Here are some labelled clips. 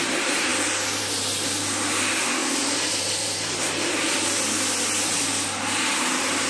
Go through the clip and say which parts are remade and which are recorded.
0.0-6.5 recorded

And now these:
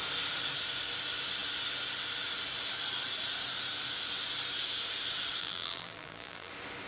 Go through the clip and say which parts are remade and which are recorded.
0.0-5.4 recorded; 5.4-6.5 remade; 6.5-6.9 recorded

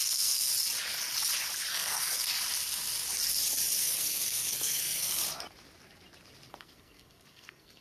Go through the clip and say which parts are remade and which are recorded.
0.0-0.5 remade; 0.5-1.7 recorded; 1.7-2.3 remade; 2.3-3.8 recorded; 3.8-5.2 remade; 5.2-6.5 recorded; 6.5-7.8 remade

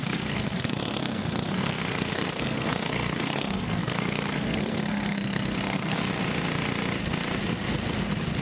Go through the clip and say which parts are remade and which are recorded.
0.0-6.0 remade; 6.0-8.4 recorded

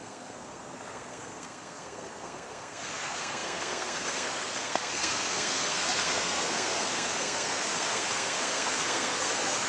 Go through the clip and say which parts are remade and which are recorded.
0.0-9.7 remade

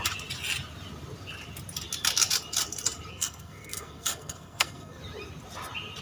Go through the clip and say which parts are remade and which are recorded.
0.0-3.1 recorded; 3.1-5.0 remade; 5.0-6.0 recorded

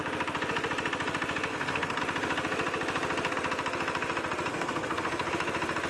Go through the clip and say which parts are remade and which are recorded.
0.0-1.5 recorded; 1.5-2.0 remade; 2.0-4.5 recorded; 4.5-5.3 remade; 5.3-5.9 recorded